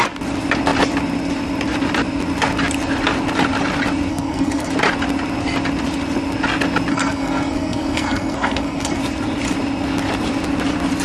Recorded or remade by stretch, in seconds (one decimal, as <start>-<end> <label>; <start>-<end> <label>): 0.0-4.1 recorded; 4.1-4.7 remade; 4.7-6.9 recorded; 6.9-9.0 remade; 9.0-11.0 recorded